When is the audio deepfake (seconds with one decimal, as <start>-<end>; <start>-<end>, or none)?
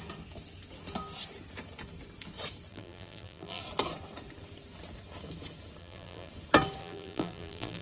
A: 2.7-3.6; 5.8-6.3; 6.8-7.8